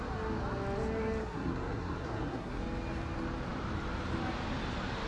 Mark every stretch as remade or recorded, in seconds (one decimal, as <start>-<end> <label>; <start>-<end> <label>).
0.0-1.2 recorded; 1.2-2.6 remade; 2.6-5.1 recorded